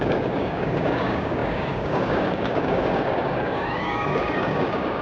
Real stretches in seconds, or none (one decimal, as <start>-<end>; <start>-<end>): none